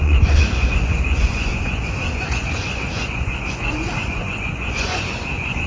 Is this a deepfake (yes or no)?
yes